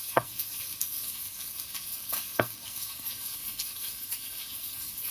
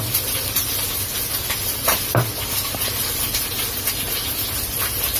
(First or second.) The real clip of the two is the second